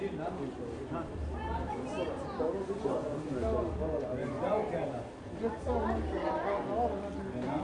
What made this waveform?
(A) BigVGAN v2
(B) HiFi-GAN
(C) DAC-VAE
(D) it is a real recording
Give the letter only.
D